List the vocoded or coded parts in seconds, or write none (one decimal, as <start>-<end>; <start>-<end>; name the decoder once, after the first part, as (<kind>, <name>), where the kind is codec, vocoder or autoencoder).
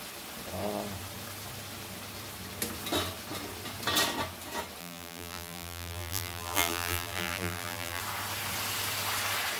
4.8-8.0 (vocoder, BigVGAN v2)